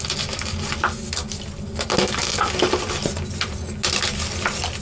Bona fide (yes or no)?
yes